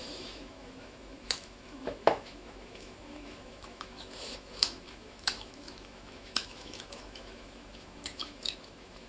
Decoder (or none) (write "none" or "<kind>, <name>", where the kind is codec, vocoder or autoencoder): autoencoder, DAC-VAE